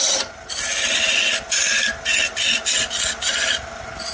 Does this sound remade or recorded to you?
recorded